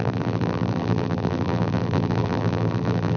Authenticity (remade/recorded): remade